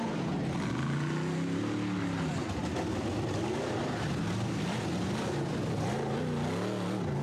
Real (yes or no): yes